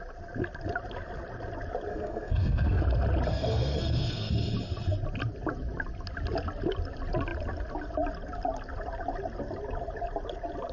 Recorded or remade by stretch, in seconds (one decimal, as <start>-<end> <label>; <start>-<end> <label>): 0.0-1.9 recorded; 1.9-2.8 remade; 2.8-3.3 recorded; 3.3-4.3 remade; 4.3-10.7 recorded